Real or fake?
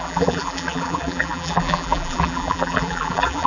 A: fake